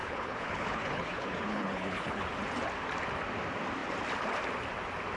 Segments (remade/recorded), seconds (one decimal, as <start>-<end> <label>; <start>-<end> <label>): 0.0-2.2 remade; 2.2-5.2 recorded

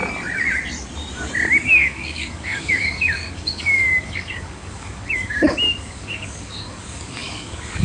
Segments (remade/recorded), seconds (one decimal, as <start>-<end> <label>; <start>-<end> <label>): 0.0-1.7 recorded; 1.7-7.8 remade

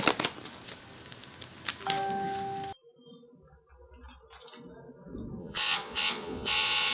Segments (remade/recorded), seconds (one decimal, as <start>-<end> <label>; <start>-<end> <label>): 0.0-5.4 recorded; 5.4-6.9 remade

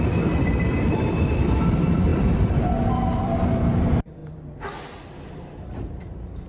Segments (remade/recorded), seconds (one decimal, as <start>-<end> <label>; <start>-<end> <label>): 0.0-4.2 remade; 4.2-5.0 recorded; 5.0-6.5 remade

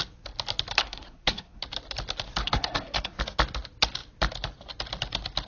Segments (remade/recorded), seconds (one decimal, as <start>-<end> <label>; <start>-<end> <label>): 0.0-0.8 recorded; 0.8-1.6 remade; 1.6-2.4 recorded; 2.4-3.2 remade; 3.2-5.5 recorded

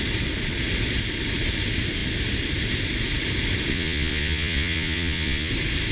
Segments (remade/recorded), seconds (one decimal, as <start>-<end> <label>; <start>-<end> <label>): 0.0-3.7 recorded; 3.7-5.5 remade; 5.5-5.9 recorded

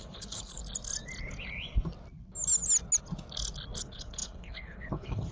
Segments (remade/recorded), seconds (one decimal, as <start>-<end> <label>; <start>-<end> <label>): 0.0-0.6 remade; 0.6-3.8 recorded; 3.8-5.3 remade

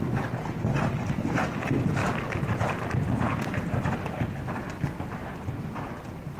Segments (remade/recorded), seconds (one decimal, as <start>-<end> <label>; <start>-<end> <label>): 0.0-2.0 recorded; 2.0-2.8 remade; 2.8-3.3 recorded; 3.3-4.7 remade; 4.7-6.4 recorded